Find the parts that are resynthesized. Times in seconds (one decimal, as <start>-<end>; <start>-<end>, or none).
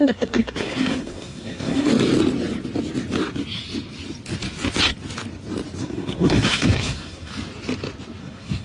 0.0-1.9; 5.8-7.3; 8.2-8.6